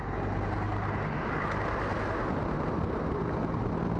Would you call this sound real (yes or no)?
yes